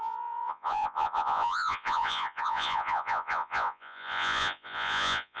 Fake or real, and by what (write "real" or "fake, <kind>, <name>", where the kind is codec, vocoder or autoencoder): fake, vocoder, Vocos